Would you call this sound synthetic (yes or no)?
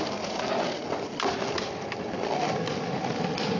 no